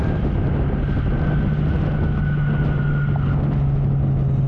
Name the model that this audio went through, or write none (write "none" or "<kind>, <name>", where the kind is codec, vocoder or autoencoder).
none